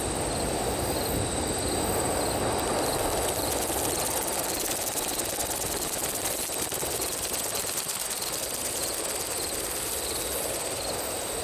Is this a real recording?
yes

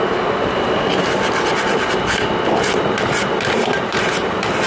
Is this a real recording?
yes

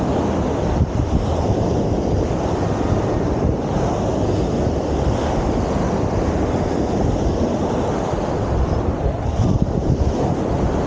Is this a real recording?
yes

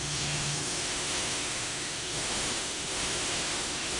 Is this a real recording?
no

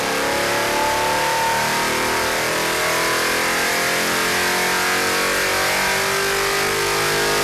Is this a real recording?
yes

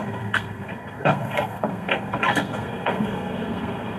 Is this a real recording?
no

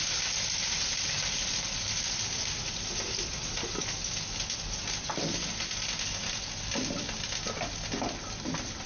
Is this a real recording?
yes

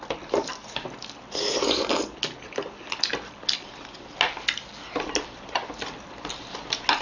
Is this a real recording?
yes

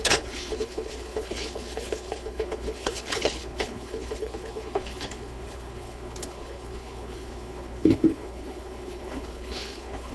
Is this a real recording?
no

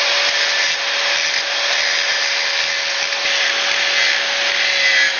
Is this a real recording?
yes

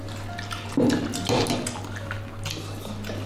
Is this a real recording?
yes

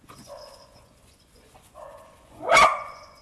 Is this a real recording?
no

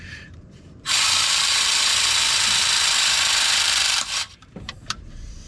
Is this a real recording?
no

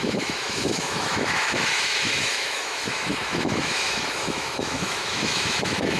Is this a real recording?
no